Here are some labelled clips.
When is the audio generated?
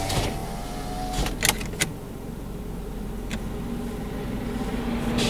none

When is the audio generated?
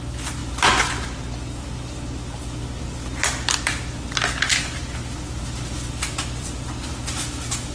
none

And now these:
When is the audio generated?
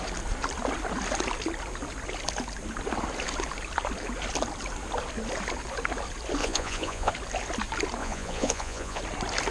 6.4-7.1; 8.0-9.0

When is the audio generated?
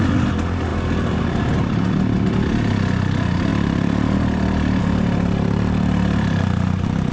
none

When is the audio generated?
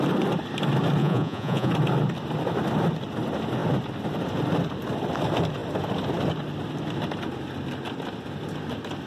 1.0-1.7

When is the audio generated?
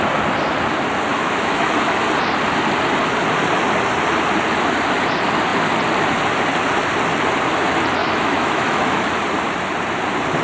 1.1-2.0; 8.0-9.1